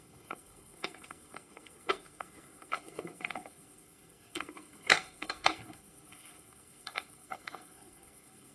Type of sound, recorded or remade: remade